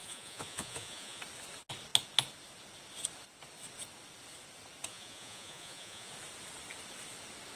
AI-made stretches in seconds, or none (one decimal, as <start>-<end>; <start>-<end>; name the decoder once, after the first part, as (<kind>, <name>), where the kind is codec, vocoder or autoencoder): 0.0-1.2 (vocoder, Vocos); 4.9-6.1